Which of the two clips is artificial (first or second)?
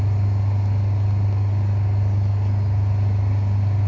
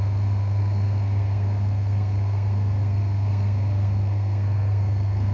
second